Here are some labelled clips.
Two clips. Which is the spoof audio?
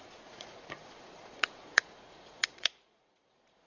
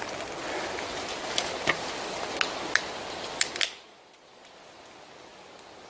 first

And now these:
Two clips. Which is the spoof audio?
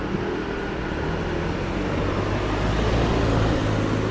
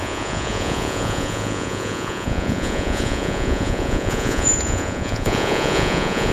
second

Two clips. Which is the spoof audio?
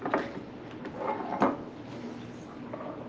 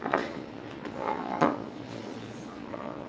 second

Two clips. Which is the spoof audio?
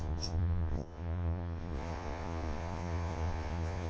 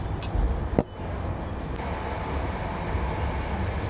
first